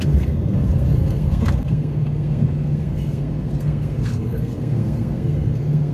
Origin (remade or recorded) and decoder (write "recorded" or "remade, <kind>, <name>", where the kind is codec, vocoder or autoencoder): remade, codec, SNAC